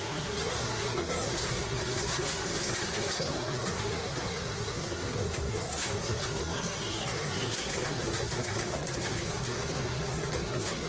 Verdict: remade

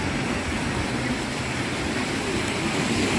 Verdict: recorded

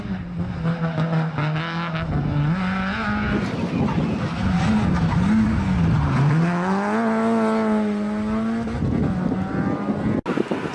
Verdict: recorded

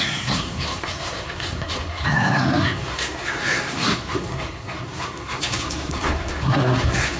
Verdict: remade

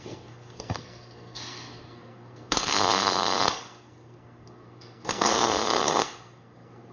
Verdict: remade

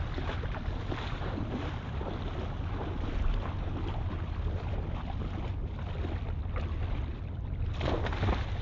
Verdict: recorded